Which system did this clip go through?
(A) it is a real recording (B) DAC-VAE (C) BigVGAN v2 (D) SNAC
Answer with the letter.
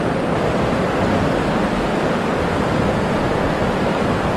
A